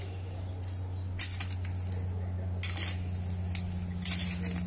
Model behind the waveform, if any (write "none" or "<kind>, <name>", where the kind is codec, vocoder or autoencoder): none